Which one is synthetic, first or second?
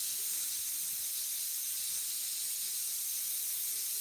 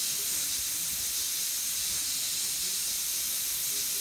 first